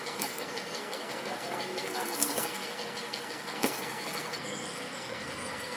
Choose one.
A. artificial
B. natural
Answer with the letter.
A